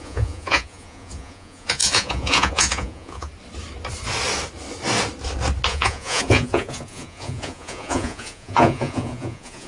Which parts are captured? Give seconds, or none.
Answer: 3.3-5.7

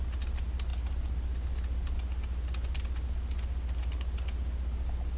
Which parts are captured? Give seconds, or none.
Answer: 0.0-5.2

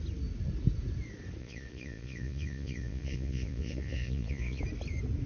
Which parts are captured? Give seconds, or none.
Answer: 0.0-1.4; 4.6-5.3

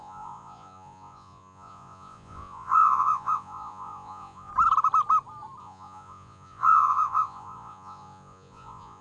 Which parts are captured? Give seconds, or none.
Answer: 4.5-5.6

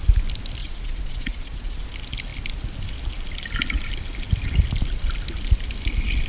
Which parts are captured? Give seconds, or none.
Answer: 0.0-0.6; 1.8-6.3

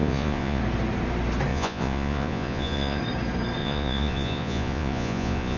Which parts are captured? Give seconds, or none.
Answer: 0.6-1.5; 3.0-3.6